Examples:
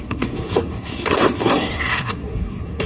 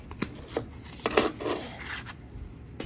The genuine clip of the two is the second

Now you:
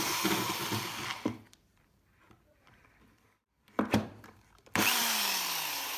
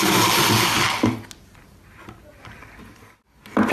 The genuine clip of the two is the second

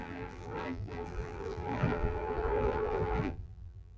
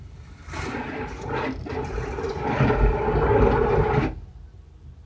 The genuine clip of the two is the second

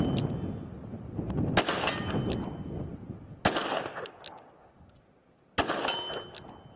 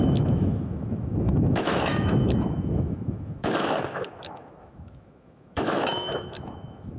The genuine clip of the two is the first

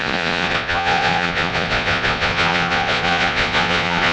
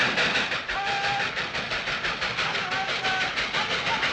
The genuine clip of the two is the second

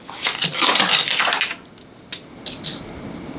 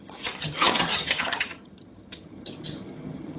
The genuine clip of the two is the first